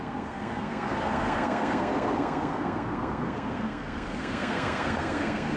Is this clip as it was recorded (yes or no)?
no